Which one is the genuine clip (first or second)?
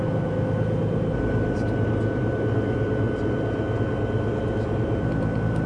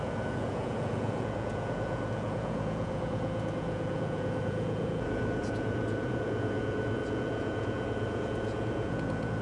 first